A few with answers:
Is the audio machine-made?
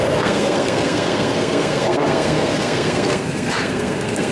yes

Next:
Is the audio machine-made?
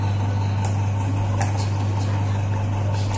no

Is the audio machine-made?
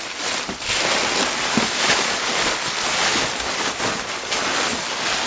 no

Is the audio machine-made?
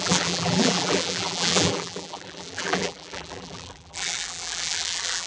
yes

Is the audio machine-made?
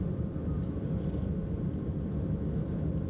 yes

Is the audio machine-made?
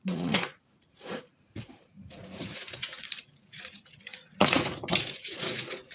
yes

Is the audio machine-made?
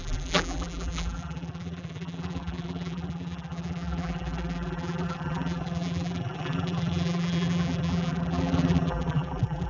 yes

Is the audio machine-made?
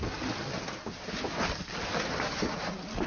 no